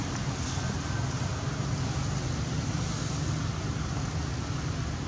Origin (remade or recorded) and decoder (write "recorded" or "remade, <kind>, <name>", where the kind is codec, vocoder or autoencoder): recorded